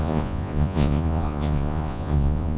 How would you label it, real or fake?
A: fake